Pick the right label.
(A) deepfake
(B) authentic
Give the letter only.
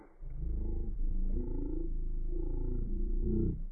A